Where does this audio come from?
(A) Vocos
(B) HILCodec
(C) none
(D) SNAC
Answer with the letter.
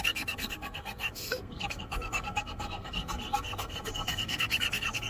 D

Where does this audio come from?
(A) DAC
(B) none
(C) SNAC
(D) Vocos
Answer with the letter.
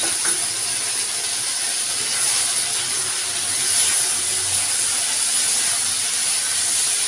B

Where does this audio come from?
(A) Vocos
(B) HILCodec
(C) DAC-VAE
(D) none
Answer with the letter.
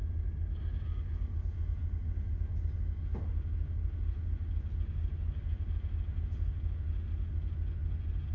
D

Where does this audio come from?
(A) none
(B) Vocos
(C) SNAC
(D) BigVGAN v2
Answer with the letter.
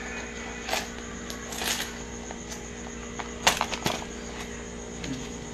A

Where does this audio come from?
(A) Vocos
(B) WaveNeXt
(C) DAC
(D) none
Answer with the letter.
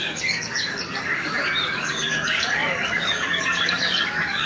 C